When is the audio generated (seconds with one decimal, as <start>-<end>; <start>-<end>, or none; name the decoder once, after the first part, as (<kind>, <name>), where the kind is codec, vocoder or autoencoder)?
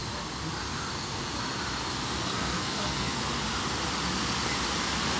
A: 2.3-3.2 (codec, SNAC)